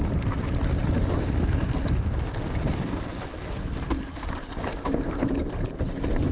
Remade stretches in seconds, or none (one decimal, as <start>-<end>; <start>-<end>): none